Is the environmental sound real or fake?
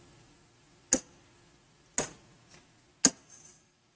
real